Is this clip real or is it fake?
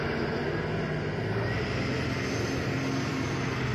real